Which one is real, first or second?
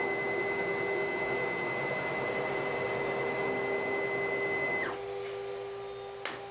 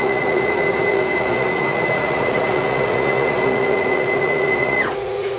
first